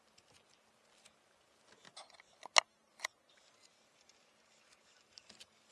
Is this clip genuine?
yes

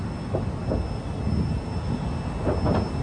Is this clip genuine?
yes